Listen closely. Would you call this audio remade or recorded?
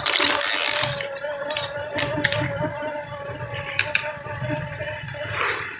recorded